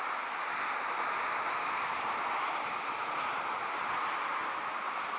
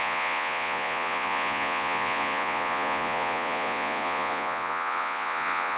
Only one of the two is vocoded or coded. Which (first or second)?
second